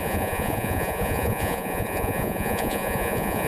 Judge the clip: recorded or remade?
remade